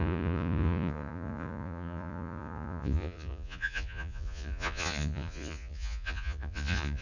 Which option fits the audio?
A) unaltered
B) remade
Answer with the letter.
B